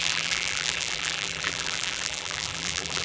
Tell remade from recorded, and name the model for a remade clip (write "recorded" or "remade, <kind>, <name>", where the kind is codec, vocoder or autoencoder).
remade, vocoder, BigVGAN v2